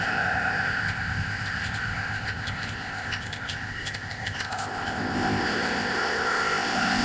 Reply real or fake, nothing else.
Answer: fake